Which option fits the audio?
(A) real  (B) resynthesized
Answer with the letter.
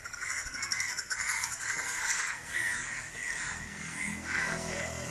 B